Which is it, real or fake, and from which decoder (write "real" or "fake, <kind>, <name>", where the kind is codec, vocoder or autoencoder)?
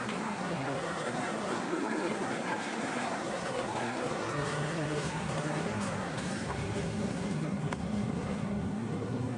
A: fake, codec, SNAC